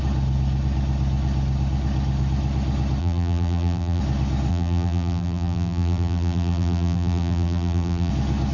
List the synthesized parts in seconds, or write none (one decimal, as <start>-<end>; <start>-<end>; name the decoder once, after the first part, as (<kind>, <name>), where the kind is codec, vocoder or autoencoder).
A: 3.0-4.0 (vocoder, BigVGAN v2); 4.5-8.1